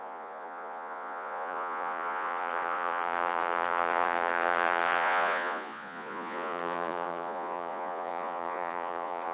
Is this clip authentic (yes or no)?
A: no